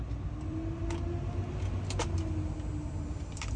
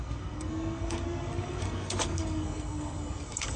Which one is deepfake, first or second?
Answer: second